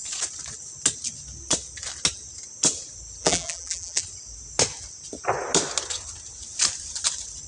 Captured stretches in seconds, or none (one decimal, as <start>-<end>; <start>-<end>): 0.0-3.2; 4.0-7.5